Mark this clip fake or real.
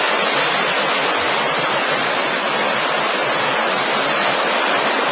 real